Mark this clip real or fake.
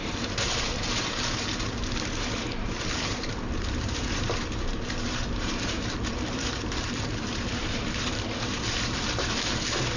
fake